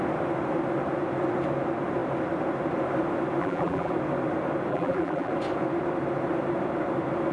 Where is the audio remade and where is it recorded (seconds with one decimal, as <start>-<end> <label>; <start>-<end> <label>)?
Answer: 0.0-3.4 recorded; 3.4-3.9 remade; 3.9-4.7 recorded; 4.7-5.3 remade; 5.3-7.3 recorded